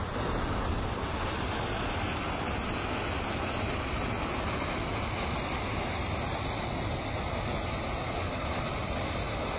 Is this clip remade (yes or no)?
no